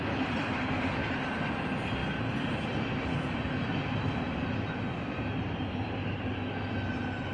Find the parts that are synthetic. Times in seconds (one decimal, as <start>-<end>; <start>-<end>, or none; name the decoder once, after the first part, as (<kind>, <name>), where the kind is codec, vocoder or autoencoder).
none